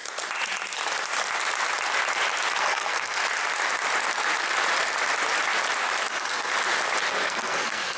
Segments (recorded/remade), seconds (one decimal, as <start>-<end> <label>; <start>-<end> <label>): 0.0-2.6 recorded; 2.6-3.2 remade; 3.2-6.1 recorded; 6.1-6.5 remade; 6.5-7.1 recorded; 7.1-8.0 remade